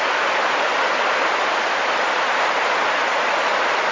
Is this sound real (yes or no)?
yes